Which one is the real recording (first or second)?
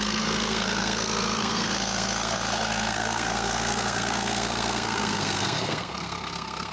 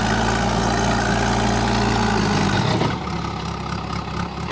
second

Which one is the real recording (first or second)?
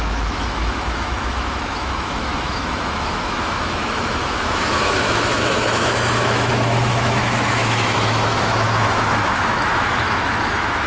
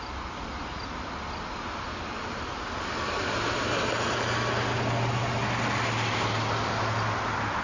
second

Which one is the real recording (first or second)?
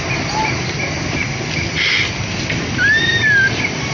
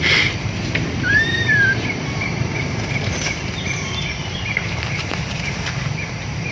first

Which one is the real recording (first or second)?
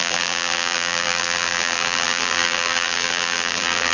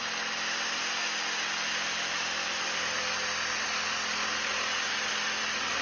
second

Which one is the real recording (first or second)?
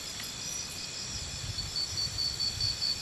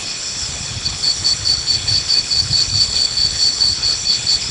first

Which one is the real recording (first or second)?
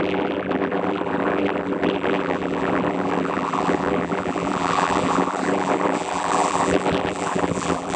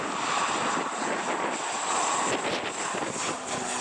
second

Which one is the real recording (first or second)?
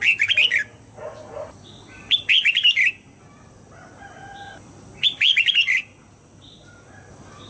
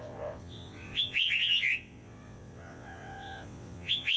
first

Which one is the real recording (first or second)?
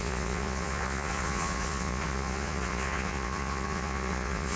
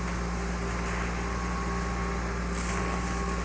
second